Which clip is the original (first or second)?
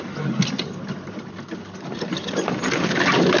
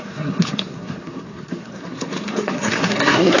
first